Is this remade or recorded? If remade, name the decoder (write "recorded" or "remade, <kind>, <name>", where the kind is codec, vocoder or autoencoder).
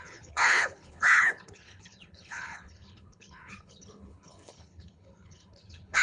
remade, codec, HILCodec